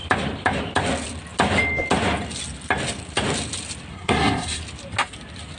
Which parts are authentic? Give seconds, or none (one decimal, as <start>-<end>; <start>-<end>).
0.0-3.9; 4.6-5.6